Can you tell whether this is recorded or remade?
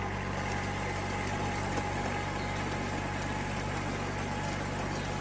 recorded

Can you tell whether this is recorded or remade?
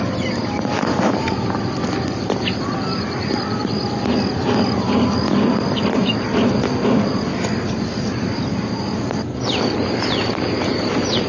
remade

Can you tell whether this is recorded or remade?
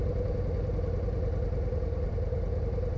recorded